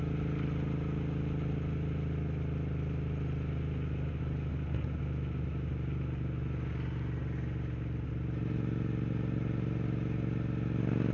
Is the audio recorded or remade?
recorded